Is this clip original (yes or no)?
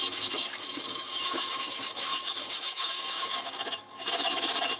no